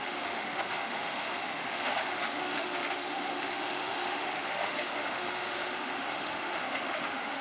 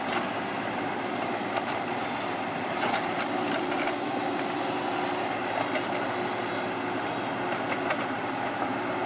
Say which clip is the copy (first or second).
first